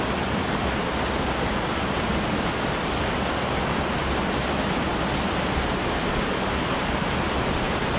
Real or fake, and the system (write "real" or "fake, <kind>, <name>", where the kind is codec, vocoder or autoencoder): real